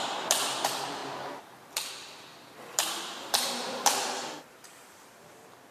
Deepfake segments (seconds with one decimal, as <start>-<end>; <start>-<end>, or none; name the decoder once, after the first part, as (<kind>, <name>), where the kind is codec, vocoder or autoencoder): 0.0-1.0 (vocoder, BigVGAN v2); 1.9-5.7